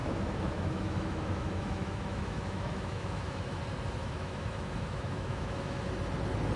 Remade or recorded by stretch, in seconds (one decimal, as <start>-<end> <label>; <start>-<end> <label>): 0.0-3.6 remade; 3.6-4.0 recorded; 4.0-5.9 remade; 5.9-6.6 recorded